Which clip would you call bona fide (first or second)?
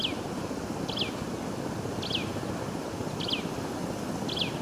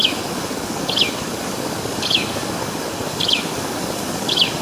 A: first